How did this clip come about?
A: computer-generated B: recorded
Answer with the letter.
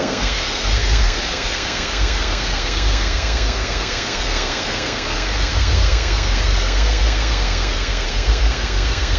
A